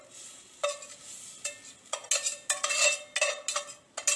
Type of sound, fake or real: real